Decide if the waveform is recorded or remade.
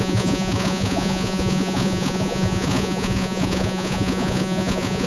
remade